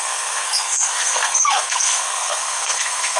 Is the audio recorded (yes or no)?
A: no